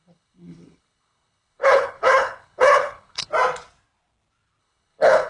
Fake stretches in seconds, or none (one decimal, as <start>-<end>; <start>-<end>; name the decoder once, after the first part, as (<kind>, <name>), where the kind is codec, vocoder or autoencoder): 0.0-3.2 (codec, HILCodec); 4.6-5.3